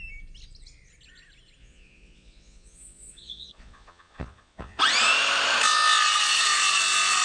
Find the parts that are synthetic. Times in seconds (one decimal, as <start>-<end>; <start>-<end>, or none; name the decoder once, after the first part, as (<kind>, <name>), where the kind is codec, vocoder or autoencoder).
1.6-4.8 (vocoder, Vocos)